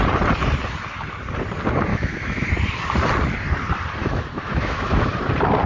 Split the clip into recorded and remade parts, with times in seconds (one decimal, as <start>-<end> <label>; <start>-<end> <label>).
0.0-1.9 recorded; 1.9-2.5 remade; 2.5-4.0 recorded; 4.0-5.1 remade; 5.1-5.7 recorded